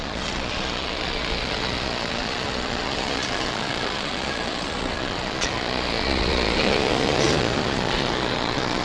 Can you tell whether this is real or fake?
fake